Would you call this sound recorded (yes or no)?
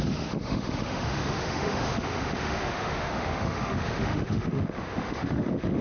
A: no